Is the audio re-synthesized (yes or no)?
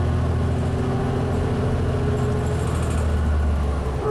no